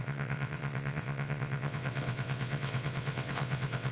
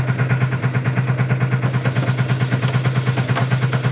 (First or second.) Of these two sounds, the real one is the second